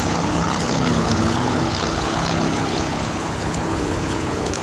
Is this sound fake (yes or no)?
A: yes